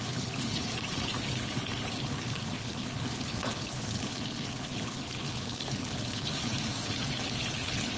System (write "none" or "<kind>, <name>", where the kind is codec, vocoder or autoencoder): codec, HILCodec